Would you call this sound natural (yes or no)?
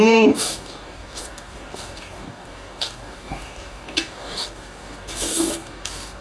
no